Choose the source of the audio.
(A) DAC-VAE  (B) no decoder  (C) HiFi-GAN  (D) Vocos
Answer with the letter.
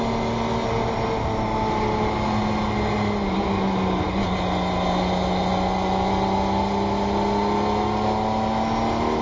B